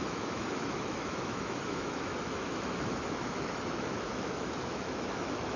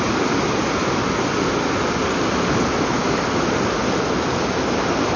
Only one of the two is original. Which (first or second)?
second